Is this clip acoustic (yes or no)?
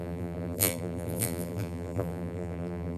no